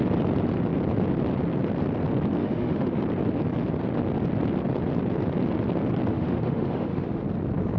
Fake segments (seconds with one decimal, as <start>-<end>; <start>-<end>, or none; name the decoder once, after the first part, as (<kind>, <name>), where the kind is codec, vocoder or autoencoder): 2.4-3.0 (autoencoder, DAC-VAE); 6.1-7.2